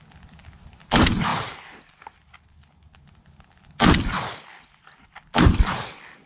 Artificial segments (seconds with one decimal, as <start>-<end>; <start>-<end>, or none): none